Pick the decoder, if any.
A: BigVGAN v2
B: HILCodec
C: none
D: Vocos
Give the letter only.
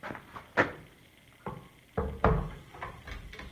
C